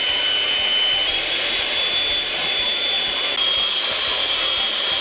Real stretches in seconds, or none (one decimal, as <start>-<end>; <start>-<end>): 0.0-5.0